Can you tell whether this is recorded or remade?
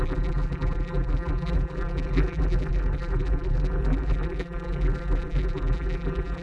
remade